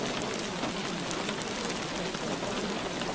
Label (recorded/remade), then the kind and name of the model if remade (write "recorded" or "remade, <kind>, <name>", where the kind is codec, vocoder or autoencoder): recorded